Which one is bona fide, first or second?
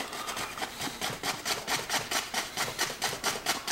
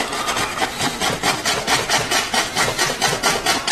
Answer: second